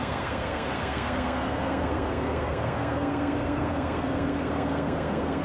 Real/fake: fake